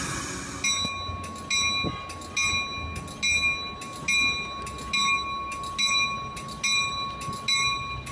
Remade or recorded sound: recorded